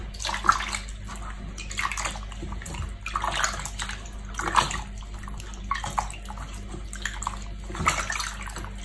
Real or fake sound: real